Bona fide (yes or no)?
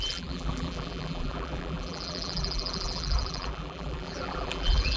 no